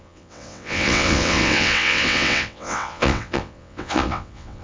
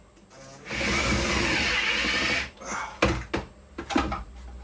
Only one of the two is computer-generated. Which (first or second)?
first